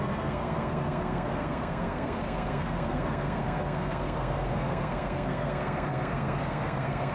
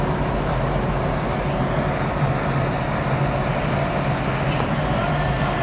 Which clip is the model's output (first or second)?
first